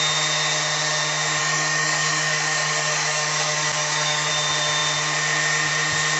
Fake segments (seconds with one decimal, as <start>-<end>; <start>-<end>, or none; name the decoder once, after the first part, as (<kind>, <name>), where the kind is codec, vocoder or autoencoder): 1.4-4.3 (codec, DAC)